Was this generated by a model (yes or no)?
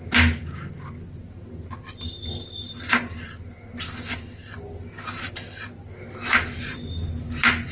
no